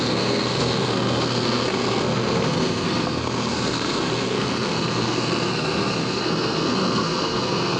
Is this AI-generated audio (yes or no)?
yes